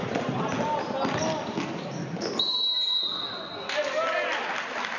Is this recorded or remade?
recorded